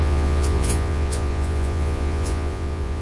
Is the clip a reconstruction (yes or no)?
yes